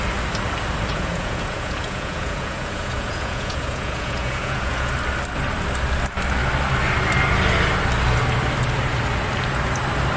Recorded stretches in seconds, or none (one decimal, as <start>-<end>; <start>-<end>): 0.0-0.9; 4.9-10.2